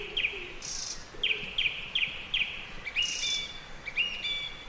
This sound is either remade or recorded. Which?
recorded